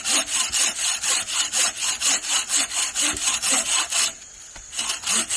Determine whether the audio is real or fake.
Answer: real